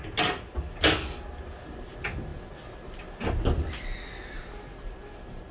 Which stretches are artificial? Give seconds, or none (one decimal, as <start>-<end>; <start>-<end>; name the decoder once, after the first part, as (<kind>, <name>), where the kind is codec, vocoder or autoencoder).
none